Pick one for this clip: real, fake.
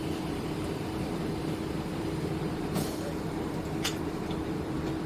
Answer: fake